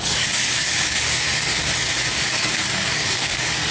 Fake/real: fake